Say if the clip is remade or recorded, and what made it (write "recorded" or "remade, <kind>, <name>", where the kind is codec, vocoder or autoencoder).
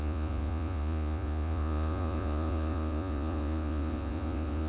remade, vocoder, Vocos